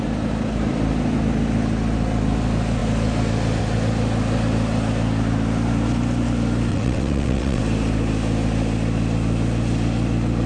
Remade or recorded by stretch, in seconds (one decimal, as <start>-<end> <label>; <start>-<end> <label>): 0.0-6.7 recorded; 6.7-7.6 remade; 7.6-10.5 recorded